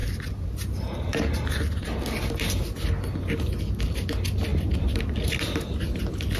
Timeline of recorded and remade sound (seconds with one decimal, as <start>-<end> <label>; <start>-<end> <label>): 0.0-6.4 recorded

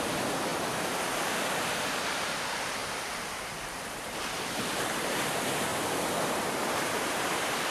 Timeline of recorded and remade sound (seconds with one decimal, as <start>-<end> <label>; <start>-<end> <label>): 0.0-0.5 remade; 0.5-1.2 recorded; 1.2-2.8 remade; 2.8-3.6 recorded; 3.6-5.7 remade; 5.7-6.2 recorded; 6.2-7.7 remade

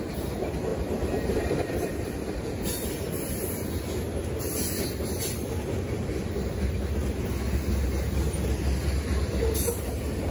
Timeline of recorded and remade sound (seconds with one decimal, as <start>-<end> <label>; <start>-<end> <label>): 0.0-10.3 recorded